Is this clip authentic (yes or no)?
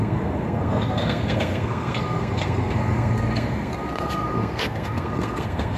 no